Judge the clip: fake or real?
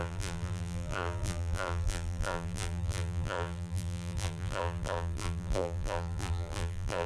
fake